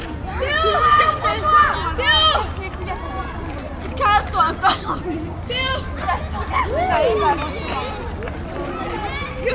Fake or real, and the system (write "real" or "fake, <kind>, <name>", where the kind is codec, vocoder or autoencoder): real